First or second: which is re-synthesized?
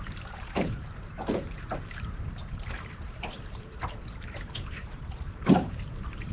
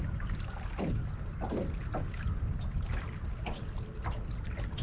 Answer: first